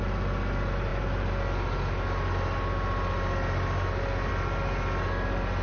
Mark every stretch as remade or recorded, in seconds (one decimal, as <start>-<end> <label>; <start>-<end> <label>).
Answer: 0.0-5.6 recorded